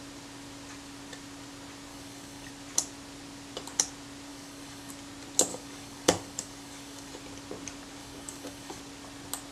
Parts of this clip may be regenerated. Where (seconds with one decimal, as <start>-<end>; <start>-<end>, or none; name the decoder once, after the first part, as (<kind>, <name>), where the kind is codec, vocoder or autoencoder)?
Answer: 1.9-2.5 (codec, DAC); 4.3-4.9; 5.5-7.1; 8.0-8.8